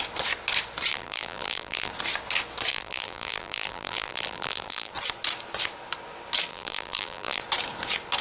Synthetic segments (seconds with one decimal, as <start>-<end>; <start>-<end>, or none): 0.9-1.9; 2.7-4.9; 6.5-7.4